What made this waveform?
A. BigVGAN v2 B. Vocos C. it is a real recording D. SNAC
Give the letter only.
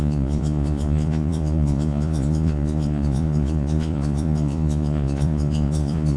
B